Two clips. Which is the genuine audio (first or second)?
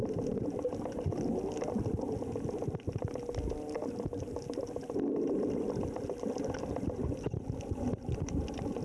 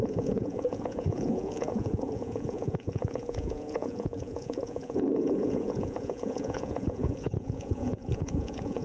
first